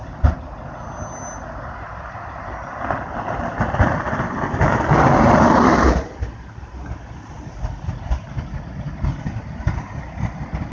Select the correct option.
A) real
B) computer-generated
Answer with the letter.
A